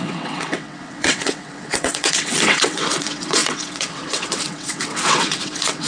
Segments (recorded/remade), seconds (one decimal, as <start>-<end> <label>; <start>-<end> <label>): 0.0-5.9 remade